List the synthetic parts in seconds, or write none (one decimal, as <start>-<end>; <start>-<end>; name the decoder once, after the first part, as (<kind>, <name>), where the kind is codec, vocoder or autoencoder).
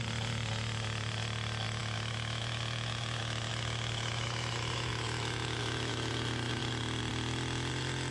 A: 1.8-6.1 (autoencoder, DAC-VAE)